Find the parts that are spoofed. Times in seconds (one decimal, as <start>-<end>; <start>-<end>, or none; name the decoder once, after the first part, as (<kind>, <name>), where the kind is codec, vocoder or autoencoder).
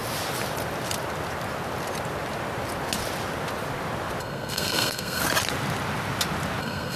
4.2-5.2 (codec, SNAC); 6.6-7.0